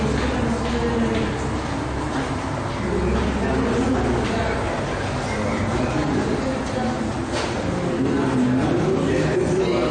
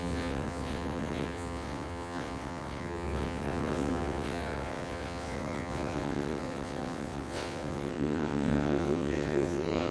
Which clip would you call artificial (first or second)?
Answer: second